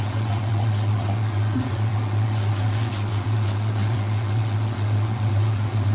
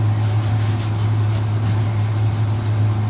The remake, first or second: first